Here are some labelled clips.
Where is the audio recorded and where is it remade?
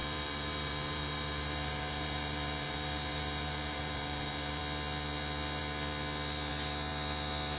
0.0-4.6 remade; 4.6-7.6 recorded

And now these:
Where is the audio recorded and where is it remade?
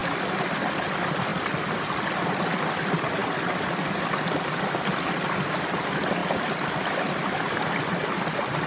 0.0-8.7 recorded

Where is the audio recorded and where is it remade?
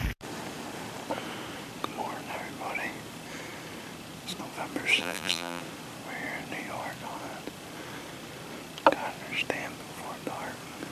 0.0-5.0 recorded; 5.0-5.6 remade; 5.6-10.9 recorded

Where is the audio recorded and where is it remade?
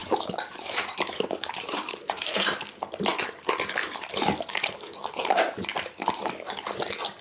0.0-2.4 remade; 2.4-5.7 recorded; 5.7-6.5 remade; 6.5-7.2 recorded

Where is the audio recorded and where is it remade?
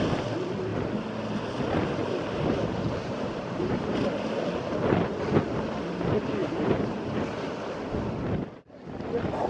0.0-2.0 recorded; 2.0-4.2 remade; 4.2-6.4 recorded; 6.4-7.1 remade; 7.1-9.5 recorded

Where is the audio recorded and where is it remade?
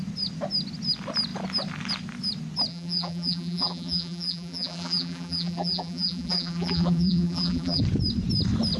0.0-2.7 recorded; 2.7-7.8 remade; 7.8-8.8 recorded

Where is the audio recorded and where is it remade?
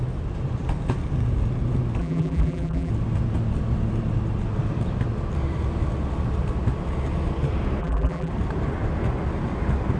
0.0-2.0 recorded; 2.0-2.9 remade; 2.9-7.8 recorded; 7.8-8.3 remade; 8.3-10.0 recorded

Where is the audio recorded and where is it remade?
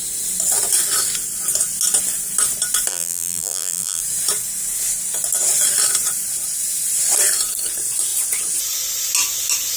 0.0-2.9 recorded; 2.9-4.0 remade; 4.0-9.8 recorded